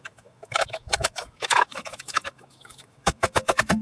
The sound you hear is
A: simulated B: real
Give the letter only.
A